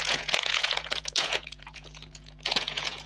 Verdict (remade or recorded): remade